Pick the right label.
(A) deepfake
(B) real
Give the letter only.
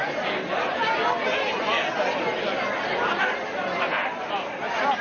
B